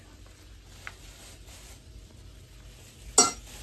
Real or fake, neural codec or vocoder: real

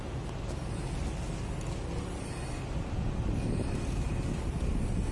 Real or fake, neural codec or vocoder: real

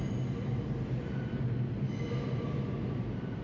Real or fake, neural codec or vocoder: real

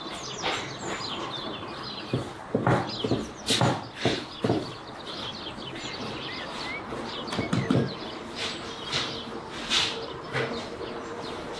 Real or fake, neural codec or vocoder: real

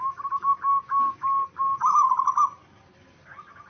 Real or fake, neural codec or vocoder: real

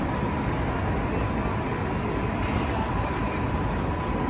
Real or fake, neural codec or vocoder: real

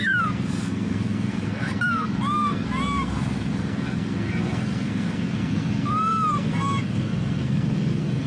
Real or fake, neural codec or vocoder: fake, codec, SNAC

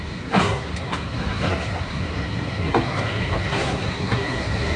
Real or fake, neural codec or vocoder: fake, codec, SNAC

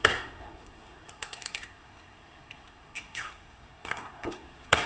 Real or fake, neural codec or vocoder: fake, codec, SNAC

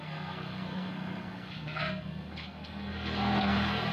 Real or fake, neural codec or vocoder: fake, codec, SNAC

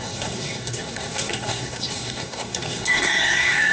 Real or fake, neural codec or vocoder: fake, codec, SNAC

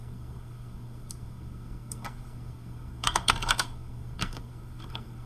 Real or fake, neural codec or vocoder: fake, codec, SNAC